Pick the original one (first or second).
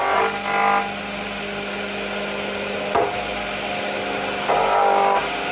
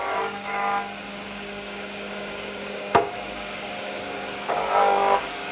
first